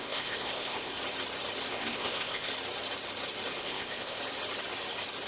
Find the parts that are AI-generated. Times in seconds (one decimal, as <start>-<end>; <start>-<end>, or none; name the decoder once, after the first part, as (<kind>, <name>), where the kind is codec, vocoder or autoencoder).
0.0-1.0 (codec, ZipCodec); 1.7-2.5; 3.6-4.2